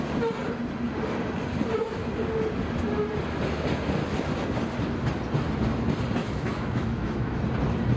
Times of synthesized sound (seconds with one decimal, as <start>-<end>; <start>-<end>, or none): 6.2-7.4